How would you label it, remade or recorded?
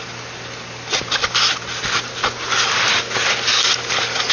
recorded